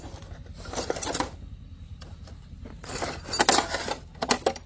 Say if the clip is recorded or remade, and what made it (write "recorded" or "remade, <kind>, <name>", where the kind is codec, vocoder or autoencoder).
recorded